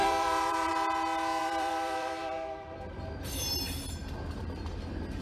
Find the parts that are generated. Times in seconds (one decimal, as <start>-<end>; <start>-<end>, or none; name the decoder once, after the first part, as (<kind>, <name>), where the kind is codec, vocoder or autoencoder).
0.0-0.7 (vocoder, BigVGAN v2); 1.4-4.0